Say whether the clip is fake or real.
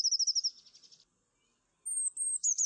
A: real